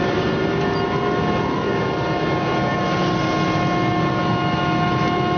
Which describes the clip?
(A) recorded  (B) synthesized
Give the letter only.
A